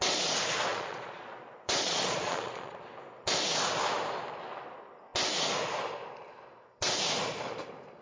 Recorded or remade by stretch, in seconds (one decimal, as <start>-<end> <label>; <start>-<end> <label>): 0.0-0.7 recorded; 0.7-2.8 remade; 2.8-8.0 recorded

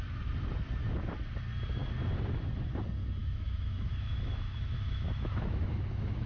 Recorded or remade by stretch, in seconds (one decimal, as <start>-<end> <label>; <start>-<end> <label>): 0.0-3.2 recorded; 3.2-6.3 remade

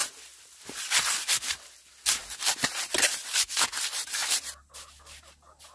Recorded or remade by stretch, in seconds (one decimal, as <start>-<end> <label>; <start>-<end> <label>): 0.0-5.7 recorded